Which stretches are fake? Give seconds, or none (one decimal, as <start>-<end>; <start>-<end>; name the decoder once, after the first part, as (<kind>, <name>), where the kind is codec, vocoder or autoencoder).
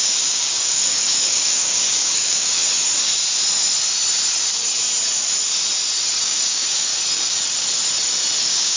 0.0-2.6 (codec, DAC); 6.2-6.9; 8.4-8.8